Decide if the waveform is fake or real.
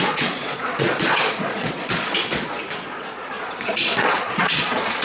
fake